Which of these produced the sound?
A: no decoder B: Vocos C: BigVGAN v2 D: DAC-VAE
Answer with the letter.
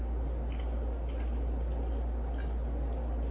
A